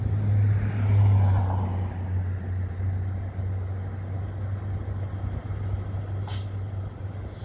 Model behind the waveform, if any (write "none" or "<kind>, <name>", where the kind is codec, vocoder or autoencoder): none